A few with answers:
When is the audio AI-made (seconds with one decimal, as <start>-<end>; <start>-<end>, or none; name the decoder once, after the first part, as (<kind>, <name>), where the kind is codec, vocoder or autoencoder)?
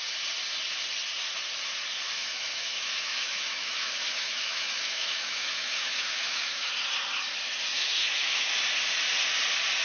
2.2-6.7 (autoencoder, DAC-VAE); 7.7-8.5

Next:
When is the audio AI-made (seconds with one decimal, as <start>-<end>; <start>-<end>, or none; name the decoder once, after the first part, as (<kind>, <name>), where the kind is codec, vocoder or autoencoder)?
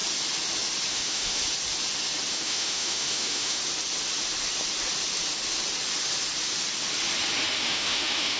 0.9-1.4 (autoencoder, DAC-VAE); 2.3-3.6; 7.6-8.4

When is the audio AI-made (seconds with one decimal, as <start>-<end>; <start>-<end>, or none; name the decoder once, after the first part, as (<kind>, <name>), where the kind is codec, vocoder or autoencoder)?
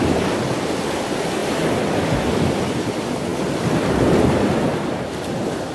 none